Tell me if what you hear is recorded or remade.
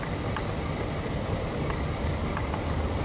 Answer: recorded